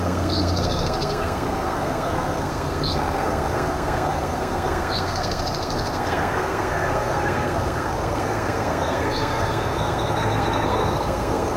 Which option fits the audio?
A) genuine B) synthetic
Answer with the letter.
B